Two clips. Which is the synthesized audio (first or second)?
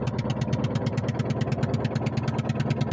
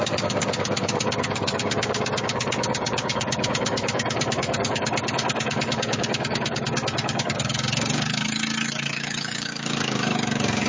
second